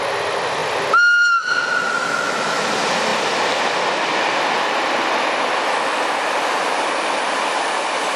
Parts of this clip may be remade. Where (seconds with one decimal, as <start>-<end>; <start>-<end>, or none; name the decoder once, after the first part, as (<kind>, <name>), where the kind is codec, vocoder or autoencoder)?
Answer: 2.0-2.6 (autoencoder, DAC-VAE)